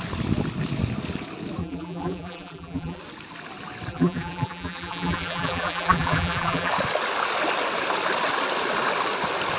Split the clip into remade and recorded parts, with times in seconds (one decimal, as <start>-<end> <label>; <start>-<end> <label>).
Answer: 0.0-1.6 recorded; 1.6-3.0 remade; 3.0-3.9 recorded; 3.9-6.7 remade; 6.7-9.6 recorded